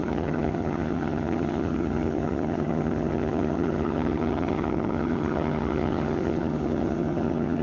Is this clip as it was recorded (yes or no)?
no